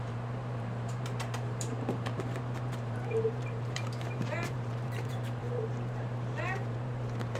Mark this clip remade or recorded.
remade